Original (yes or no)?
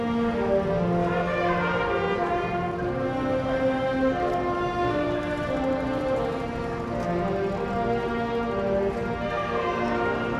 yes